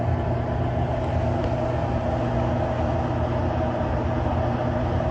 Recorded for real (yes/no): yes